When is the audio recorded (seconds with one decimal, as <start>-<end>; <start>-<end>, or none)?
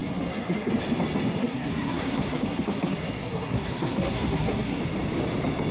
0.7-1.4; 4.8-5.7